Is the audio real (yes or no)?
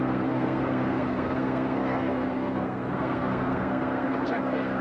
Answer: no